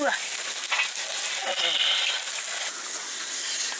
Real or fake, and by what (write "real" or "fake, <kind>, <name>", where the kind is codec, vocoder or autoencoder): real